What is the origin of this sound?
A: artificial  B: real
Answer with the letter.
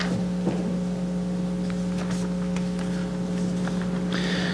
B